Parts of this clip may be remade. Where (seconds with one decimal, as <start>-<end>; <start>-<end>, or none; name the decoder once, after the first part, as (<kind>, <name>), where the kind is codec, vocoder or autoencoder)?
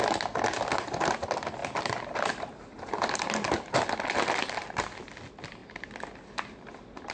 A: none